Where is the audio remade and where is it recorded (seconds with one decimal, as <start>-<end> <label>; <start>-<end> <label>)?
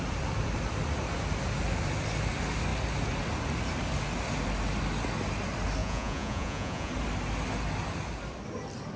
0.0-5.8 recorded; 5.8-6.9 remade; 6.9-9.0 recorded